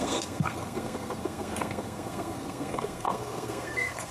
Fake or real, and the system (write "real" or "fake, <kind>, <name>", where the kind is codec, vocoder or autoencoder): fake, codec, SNAC